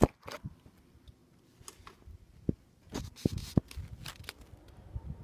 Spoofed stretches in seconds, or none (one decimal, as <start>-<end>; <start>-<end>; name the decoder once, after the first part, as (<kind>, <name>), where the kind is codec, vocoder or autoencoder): none